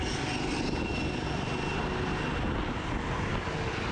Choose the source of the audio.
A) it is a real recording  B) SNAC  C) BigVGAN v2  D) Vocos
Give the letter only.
A